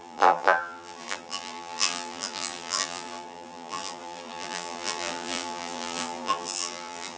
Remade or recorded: remade